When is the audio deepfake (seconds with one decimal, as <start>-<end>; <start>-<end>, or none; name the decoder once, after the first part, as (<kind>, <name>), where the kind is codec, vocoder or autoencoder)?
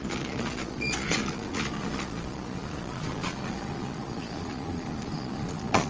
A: 0.0-5.9 (vocoder, Vocos)